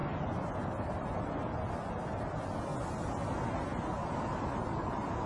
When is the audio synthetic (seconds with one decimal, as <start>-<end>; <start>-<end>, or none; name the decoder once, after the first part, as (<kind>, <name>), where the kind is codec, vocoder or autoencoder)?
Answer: 2.2-2.7 (vocoder, BigVGAN v2); 4.2-5.3